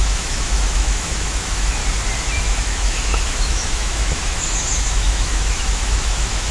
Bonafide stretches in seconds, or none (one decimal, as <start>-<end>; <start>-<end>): 1.8-2.4